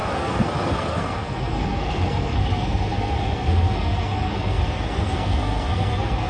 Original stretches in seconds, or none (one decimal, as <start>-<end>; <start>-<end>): none